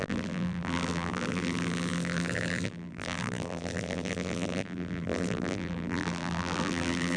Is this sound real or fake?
fake